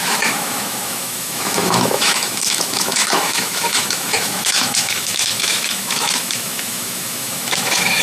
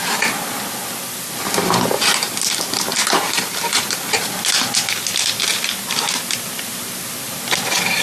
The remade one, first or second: first